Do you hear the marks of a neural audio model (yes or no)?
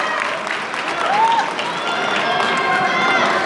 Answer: no